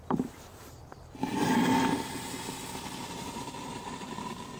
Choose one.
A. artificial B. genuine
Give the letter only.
A